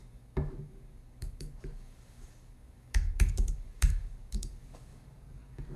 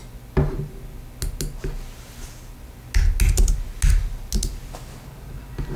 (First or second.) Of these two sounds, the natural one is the second